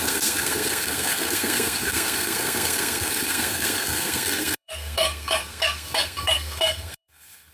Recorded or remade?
remade